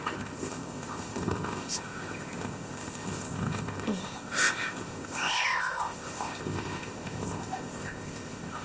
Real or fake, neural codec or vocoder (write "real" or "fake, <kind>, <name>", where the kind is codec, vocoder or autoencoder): fake, codec, ZipCodec